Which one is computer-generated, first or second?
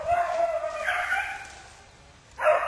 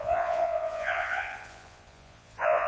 second